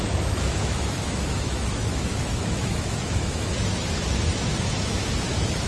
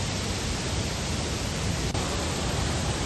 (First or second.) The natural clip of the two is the second